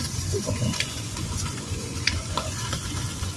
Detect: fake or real fake